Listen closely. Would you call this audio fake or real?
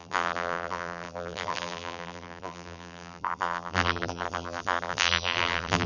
fake